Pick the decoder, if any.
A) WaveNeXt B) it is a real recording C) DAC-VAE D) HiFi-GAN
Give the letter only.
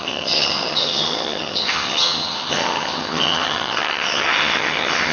D